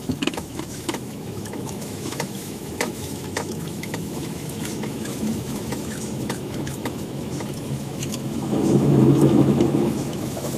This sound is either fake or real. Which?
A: fake